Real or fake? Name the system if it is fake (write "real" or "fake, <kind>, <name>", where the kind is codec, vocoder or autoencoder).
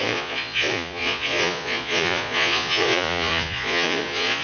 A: fake, vocoder, Vocos